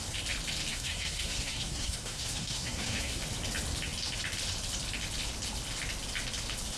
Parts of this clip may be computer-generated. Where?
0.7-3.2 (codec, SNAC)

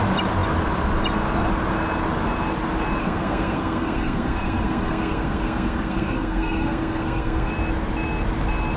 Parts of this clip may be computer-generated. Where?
3.0-7.5 (codec, SNAC)